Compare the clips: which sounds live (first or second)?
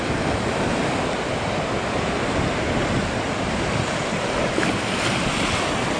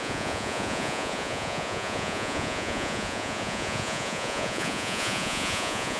first